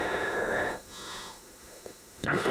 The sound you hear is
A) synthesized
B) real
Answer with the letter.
A